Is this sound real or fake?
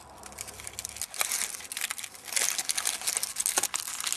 real